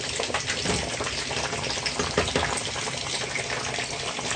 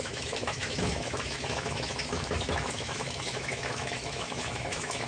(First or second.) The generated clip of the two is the second